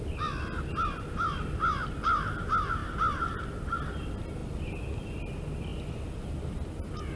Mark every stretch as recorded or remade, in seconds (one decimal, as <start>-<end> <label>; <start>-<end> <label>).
0.0-7.2 recorded